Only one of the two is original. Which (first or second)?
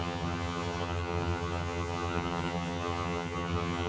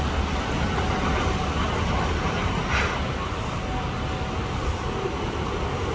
second